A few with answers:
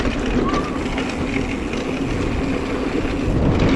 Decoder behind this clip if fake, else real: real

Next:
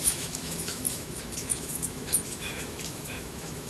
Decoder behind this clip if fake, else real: fake, autoencoder, DAC-VAE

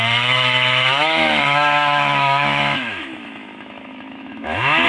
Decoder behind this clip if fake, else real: fake, autoencoder, DAC-VAE